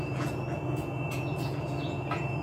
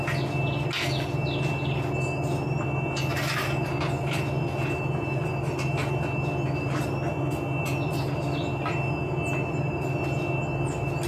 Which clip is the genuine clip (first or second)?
second